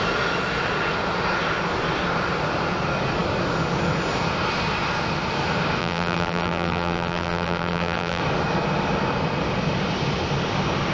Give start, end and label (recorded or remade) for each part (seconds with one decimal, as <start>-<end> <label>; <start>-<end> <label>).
0.0-5.8 recorded; 5.8-8.2 remade; 8.2-10.9 recorded